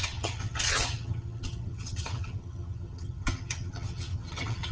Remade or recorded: remade